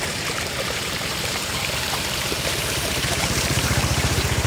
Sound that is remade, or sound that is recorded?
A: remade